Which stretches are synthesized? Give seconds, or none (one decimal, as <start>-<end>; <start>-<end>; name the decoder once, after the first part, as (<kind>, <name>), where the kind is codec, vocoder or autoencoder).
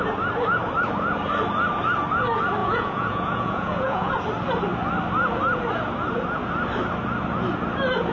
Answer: 2.6-4.1 (vocoder, Vocos)